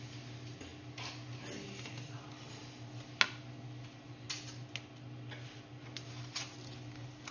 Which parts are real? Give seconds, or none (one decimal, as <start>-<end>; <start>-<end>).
0.0-7.3